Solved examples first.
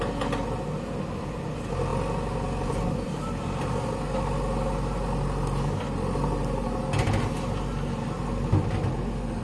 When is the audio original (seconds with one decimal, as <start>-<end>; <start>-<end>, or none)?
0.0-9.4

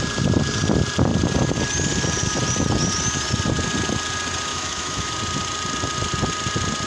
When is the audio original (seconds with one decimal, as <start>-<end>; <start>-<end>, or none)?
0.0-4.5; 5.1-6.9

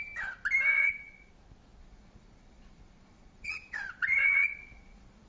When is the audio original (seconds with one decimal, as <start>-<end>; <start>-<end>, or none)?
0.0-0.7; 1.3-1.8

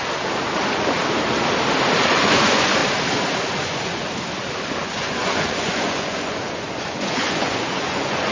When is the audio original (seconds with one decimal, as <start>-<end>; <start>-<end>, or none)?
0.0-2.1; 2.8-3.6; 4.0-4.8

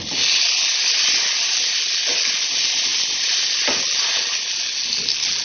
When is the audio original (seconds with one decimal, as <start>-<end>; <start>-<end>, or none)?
0.0-5.4

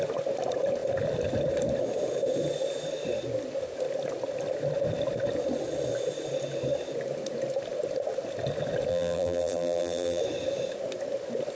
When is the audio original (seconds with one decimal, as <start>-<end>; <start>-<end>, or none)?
0.0-8.9; 10.2-11.6

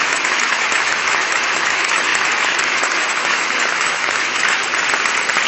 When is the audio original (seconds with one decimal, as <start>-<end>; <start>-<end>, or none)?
4.6-5.5

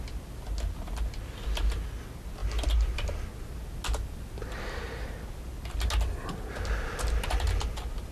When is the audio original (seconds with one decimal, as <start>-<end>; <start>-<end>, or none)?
0.0-8.1